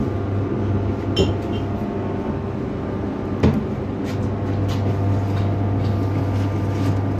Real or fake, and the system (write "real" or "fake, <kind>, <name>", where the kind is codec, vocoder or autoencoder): real